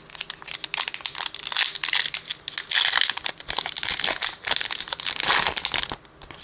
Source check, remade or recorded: recorded